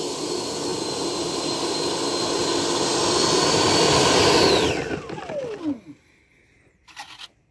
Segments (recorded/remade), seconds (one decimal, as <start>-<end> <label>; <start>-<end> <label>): 0.0-7.5 recorded